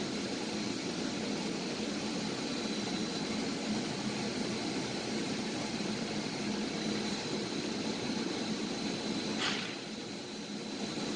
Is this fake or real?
fake